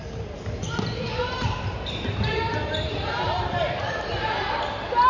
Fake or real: fake